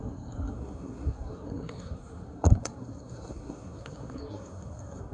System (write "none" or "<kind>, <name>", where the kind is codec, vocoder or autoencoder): codec, SNAC